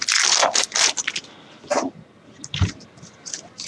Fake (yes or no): no